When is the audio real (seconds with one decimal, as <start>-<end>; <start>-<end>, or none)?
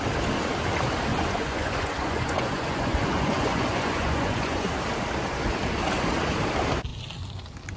0.0-1.1; 4.7-7.8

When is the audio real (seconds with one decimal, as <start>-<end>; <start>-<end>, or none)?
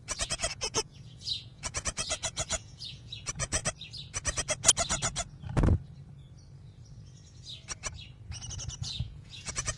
3.6-8.8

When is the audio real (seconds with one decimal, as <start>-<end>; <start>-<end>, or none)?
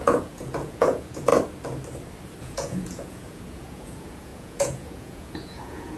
1.3-2.4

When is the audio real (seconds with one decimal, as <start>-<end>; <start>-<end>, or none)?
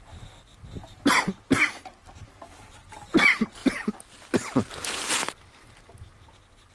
0.0-6.7